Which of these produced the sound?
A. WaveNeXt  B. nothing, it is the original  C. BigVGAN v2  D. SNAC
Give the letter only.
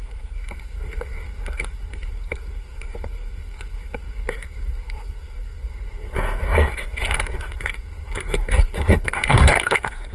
D